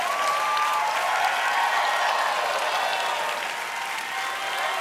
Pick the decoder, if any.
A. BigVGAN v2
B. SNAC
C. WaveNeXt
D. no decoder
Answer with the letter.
D